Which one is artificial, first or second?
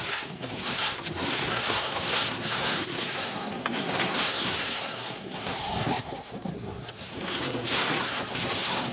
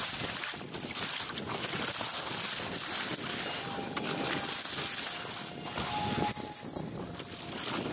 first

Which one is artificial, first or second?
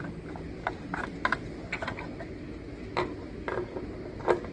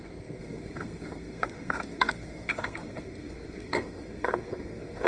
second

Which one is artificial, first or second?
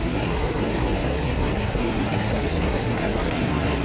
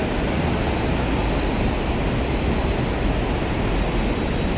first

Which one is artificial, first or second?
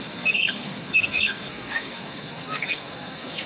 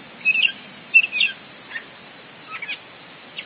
first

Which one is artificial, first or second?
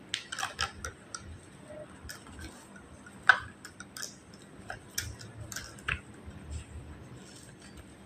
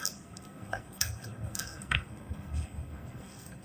second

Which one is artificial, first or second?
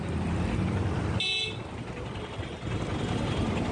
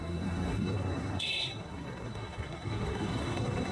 second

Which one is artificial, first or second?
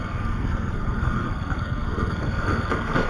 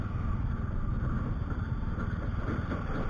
first